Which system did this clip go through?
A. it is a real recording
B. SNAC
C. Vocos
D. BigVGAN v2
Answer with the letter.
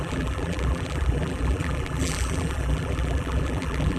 D